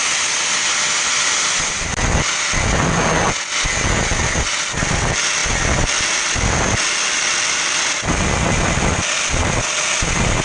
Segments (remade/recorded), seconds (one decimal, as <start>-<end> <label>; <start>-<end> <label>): 0.0-10.4 recorded